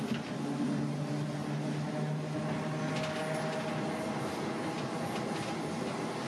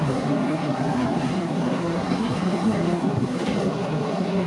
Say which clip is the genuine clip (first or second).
first